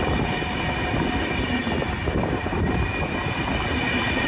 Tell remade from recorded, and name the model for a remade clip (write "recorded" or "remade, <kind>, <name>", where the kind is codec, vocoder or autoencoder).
recorded